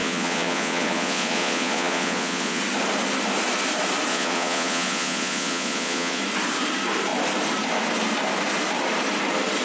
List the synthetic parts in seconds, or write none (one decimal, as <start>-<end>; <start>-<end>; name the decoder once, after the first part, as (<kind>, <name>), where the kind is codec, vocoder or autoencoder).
0.0-2.6 (vocoder, Vocos); 4.1-6.2